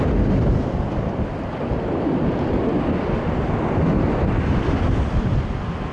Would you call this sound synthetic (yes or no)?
no